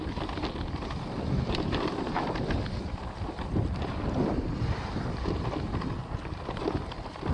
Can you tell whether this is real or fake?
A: real